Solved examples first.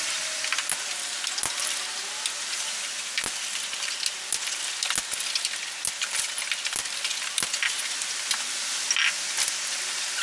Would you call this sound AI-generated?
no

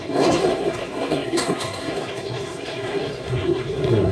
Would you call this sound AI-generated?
yes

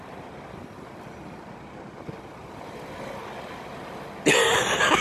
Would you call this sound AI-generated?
no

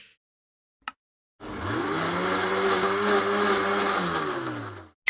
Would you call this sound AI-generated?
no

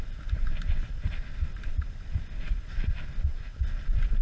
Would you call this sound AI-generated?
no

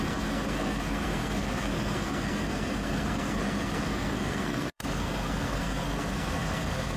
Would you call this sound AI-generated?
yes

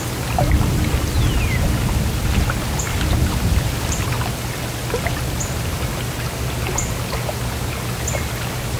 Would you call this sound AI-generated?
no